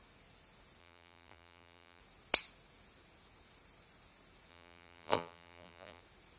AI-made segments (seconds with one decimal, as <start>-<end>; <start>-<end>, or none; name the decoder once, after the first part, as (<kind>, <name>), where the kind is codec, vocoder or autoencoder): 0.8-2.0 (vocoder, BigVGAN v2); 4.5-6.0